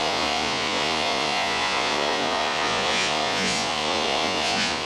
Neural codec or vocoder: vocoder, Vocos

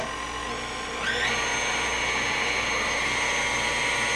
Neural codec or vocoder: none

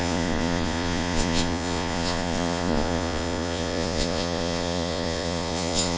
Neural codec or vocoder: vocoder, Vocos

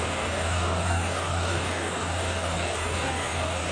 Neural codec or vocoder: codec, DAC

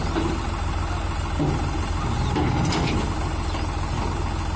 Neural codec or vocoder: none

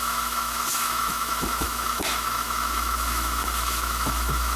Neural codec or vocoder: autoencoder, DAC-VAE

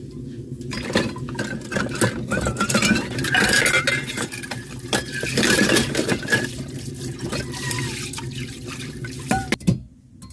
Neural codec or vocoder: none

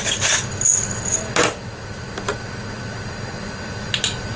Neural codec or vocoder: none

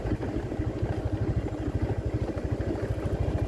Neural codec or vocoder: none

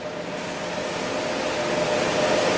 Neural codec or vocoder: vocoder, BigVGAN v2